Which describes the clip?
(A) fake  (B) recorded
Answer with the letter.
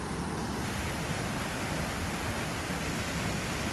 B